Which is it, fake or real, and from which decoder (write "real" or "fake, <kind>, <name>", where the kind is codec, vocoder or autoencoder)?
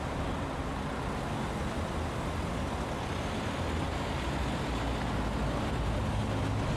real